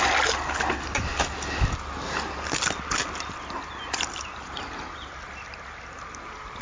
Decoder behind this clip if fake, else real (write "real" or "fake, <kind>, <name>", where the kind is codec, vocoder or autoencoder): real